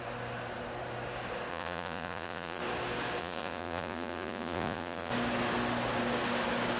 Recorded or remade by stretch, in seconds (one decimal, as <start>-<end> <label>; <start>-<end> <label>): 0.0-1.5 recorded; 1.5-2.6 remade; 2.6-3.2 recorded; 3.2-5.1 remade; 5.1-6.8 recorded

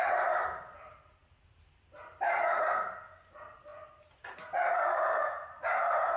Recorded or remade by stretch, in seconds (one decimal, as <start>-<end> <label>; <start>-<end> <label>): 0.0-6.2 recorded

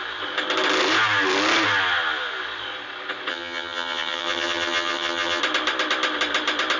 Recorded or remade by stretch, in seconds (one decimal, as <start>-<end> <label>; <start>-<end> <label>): 0.0-3.3 recorded; 3.3-5.4 remade; 5.4-6.8 recorded

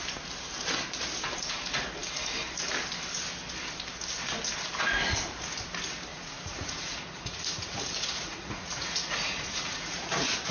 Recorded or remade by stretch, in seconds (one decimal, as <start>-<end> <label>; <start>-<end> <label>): 0.0-6.1 recorded; 6.1-10.0 remade; 10.0-10.5 recorded